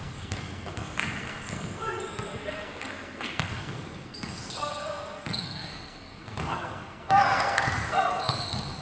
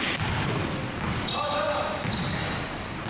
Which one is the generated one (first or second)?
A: first